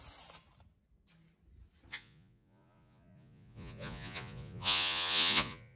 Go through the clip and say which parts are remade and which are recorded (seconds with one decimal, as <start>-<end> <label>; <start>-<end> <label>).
0.0-1.9 recorded; 1.9-5.8 remade